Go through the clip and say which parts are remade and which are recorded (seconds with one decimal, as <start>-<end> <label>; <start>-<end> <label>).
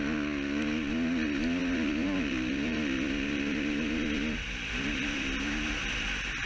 0.0-1.6 recorded; 1.6-5.4 remade; 5.4-6.5 recorded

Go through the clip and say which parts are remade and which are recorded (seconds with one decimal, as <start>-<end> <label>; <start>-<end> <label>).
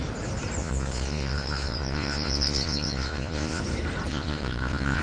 0.0-0.6 recorded; 0.6-3.6 remade; 3.6-4.1 recorded; 4.1-5.0 remade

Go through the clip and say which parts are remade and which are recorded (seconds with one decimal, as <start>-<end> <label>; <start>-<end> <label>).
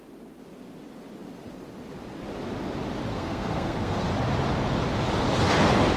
0.0-3.1 recorded; 3.1-4.1 remade; 4.1-6.0 recorded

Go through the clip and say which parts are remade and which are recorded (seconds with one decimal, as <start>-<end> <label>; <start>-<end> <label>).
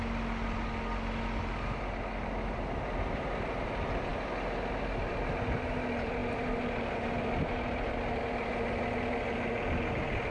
0.0-10.3 recorded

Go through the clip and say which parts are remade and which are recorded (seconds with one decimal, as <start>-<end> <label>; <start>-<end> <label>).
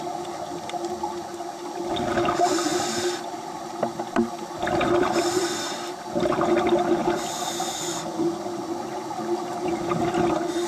0.0-2.7 recorded; 2.7-6.6 remade; 6.6-10.7 recorded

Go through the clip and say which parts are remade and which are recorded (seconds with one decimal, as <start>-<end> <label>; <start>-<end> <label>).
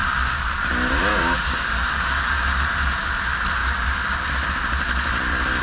0.0-1.1 recorded; 1.1-2.3 remade; 2.3-3.6 recorded; 3.6-4.2 remade; 4.2-5.6 recorded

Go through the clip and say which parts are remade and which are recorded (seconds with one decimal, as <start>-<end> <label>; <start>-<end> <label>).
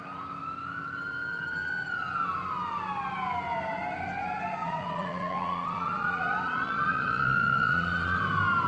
0.0-4.6 recorded; 4.6-8.2 remade; 8.2-8.7 recorded